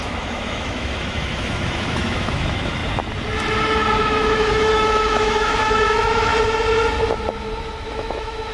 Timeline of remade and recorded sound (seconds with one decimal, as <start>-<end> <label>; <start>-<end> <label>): 0.0-2.8 remade; 2.8-4.0 recorded; 4.0-6.3 remade; 6.3-7.9 recorded; 7.9-8.5 remade